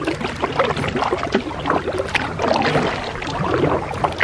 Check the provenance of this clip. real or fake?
real